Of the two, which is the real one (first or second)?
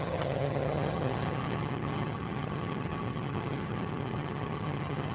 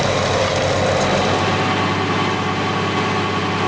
second